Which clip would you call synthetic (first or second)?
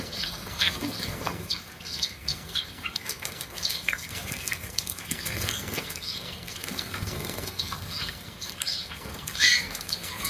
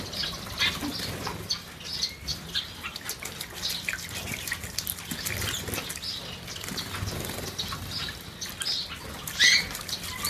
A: first